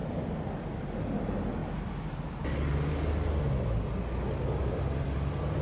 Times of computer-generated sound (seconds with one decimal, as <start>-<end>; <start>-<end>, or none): 0.8-1.6; 4.6-5.6